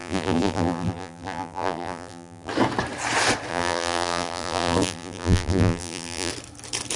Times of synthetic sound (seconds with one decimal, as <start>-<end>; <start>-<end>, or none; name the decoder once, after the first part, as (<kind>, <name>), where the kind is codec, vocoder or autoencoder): 0.0-2.5 (vocoder, BigVGAN v2); 3.5-6.3

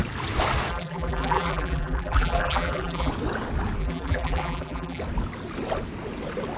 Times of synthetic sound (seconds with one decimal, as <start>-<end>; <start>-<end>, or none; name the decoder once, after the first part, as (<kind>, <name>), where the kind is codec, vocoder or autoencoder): 0.7-3.1 (vocoder, BigVGAN v2); 3.8-5.0

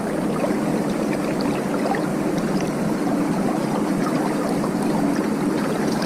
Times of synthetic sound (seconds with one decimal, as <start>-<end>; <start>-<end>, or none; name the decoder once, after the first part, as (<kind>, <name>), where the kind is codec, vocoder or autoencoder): 0.7-1.2 (vocoder, BigVGAN v2); 2.1-2.7

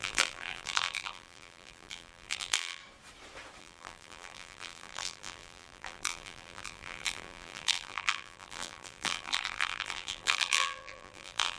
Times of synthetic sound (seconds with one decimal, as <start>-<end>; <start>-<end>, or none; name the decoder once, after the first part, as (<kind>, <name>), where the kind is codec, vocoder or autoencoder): 0.0-2.8 (vocoder, BigVGAN v2); 3.6-11.6

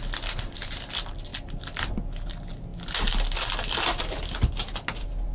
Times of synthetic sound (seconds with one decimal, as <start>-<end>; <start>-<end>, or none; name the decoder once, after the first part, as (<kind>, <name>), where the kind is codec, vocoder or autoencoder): none

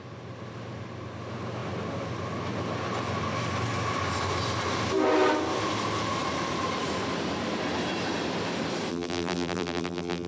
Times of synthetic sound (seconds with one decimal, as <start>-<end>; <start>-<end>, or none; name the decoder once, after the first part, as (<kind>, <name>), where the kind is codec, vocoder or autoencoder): 8.9-10.3 (vocoder, BigVGAN v2)

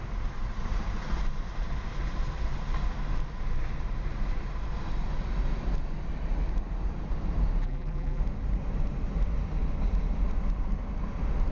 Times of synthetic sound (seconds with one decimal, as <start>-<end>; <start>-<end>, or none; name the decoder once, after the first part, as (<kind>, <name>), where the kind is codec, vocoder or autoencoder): 7.6-8.2 (vocoder, BigVGAN v2)

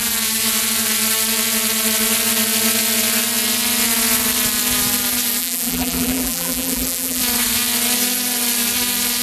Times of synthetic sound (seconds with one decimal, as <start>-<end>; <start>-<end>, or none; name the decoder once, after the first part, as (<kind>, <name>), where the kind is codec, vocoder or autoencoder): 5.4-7.2 (vocoder, BigVGAN v2)